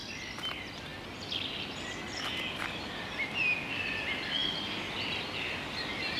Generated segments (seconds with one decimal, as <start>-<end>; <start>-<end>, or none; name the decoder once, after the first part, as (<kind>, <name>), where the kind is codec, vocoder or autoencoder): none